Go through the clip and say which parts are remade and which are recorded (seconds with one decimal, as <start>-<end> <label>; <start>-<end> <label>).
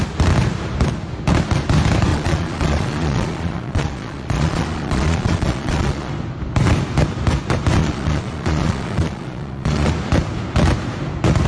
0.0-2.1 recorded; 2.1-6.1 remade; 6.1-7.8 recorded; 7.8-9.9 remade; 9.9-11.5 recorded